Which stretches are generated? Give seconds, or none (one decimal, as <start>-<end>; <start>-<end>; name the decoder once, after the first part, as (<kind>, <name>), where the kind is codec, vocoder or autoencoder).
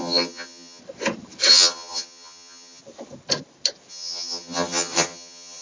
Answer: 0.0-0.8 (vocoder, HiFi-GAN); 1.5-2.8; 3.9-5.6